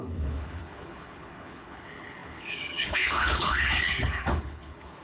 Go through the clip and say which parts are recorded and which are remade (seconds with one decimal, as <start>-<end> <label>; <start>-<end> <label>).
0.0-5.0 remade